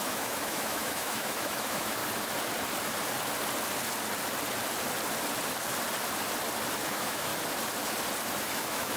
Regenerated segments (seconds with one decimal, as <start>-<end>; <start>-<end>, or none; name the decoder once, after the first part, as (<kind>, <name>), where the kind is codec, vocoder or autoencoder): 0.0-2.0 (autoencoder, DAC-VAE); 6.8-7.3; 8.4-9.0